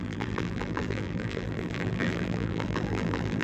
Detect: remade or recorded remade